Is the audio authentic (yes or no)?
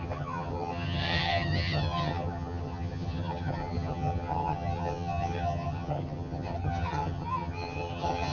no